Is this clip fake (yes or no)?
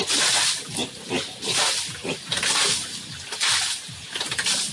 no